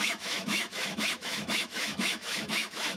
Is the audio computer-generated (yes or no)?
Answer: yes